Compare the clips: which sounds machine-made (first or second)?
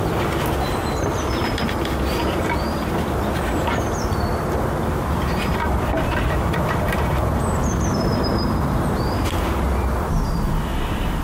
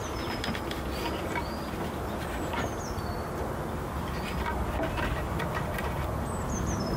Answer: first